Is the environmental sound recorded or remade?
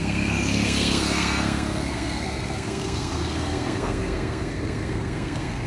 remade